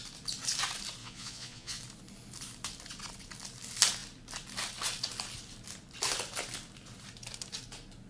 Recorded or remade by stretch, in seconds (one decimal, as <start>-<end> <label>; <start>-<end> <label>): 0.0-1.0 recorded; 1.0-1.8 remade; 1.8-8.1 recorded